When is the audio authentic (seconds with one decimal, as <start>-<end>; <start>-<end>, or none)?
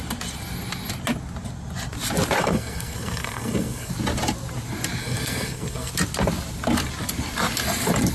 0.0-2.4; 3.9-5.0; 5.9-8.1